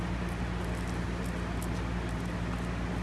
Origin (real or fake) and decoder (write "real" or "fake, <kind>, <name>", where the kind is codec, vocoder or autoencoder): real